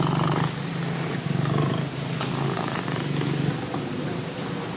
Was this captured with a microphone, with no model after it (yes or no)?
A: yes